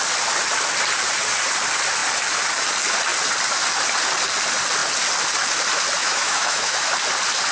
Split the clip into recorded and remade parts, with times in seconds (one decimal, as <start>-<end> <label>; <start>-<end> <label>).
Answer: 0.0-6.0 recorded; 6.0-6.9 remade; 6.9-7.5 recorded